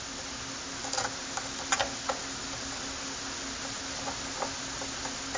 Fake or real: real